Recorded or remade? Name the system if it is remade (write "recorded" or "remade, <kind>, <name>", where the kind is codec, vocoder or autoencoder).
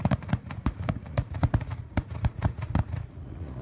remade, vocoder, Vocos